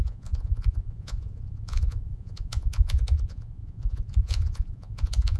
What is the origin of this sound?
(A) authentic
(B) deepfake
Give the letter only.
B